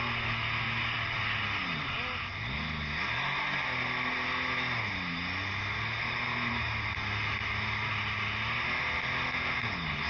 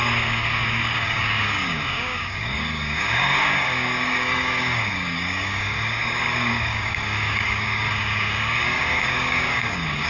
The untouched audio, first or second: first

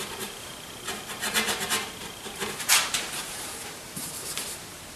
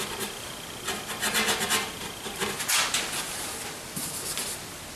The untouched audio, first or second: second